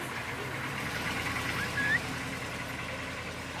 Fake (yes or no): no